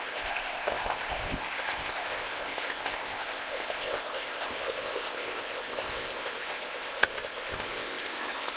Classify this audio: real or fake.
fake